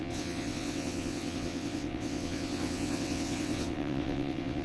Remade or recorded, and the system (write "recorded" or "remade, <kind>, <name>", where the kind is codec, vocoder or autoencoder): remade, vocoder, WaveNeXt